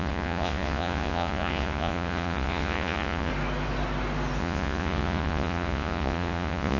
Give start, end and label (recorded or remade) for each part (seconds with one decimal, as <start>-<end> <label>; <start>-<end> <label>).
0.0-3.3 remade; 3.3-4.4 recorded; 4.4-6.8 remade